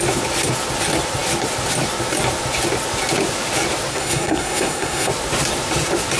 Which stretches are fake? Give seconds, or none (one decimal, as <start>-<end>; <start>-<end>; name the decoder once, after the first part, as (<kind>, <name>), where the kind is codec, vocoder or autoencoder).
3.9-5.1 (codec, SNAC)